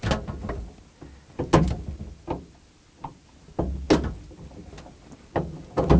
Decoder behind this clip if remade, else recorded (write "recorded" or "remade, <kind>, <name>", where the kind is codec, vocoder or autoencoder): recorded